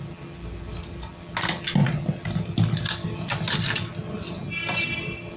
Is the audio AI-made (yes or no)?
no